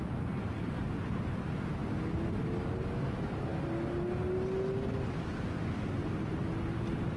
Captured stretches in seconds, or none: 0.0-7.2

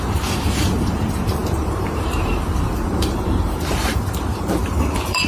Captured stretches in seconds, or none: none

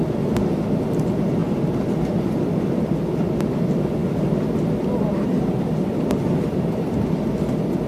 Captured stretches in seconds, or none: 0.0-4.0; 7.2-7.9

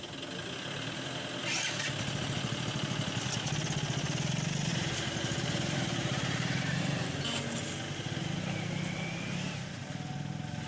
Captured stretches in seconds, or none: 0.0-4.7; 6.8-10.7

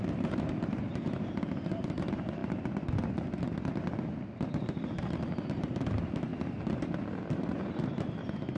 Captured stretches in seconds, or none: 2.4-4.5; 6.3-7.3

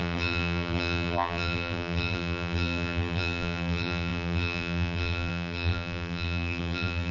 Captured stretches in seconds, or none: none